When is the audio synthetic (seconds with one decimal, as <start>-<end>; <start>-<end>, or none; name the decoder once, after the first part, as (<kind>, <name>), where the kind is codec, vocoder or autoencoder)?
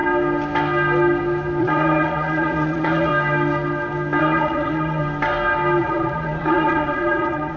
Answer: 1.6-3.1 (vocoder, Vocos); 4.2-5.0; 5.8-7.6